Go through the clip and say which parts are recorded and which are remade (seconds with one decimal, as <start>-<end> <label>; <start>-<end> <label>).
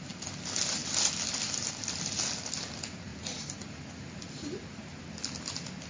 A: 0.0-5.9 recorded